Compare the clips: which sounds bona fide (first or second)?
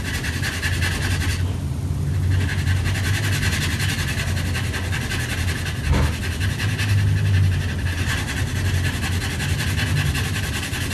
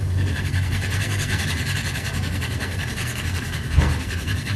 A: first